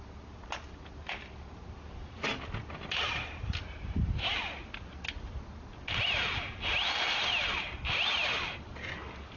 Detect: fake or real real